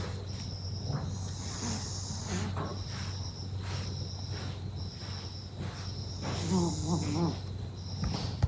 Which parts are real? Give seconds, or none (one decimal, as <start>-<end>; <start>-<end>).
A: 0.0-8.5